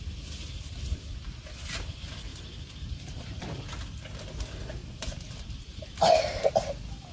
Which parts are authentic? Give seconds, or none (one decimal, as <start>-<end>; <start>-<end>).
0.0-2.3; 4.2-4.8; 5.8-7.1